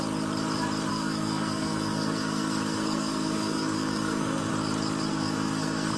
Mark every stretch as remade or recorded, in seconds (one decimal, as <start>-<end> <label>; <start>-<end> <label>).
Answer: 0.0-0.9 recorded; 0.9-4.5 remade; 4.5-5.1 recorded; 5.1-6.0 remade